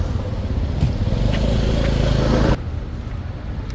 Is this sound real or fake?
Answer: real